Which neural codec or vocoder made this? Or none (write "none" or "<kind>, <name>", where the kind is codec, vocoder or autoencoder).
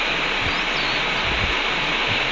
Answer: none